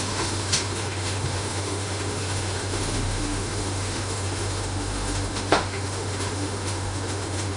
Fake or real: fake